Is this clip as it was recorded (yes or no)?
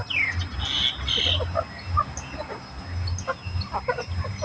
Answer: yes